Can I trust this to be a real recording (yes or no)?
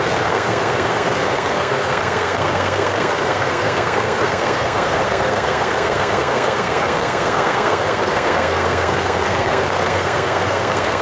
no